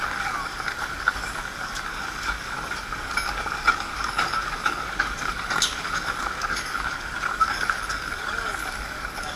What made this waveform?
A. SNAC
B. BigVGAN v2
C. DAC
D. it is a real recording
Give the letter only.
C